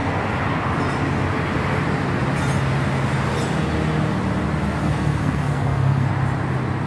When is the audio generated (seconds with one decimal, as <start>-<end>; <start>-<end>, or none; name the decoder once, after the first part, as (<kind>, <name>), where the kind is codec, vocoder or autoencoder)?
4.8-6.1 (codec, SNAC)